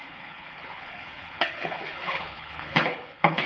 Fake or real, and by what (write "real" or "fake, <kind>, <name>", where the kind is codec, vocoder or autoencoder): fake, codec, HILCodec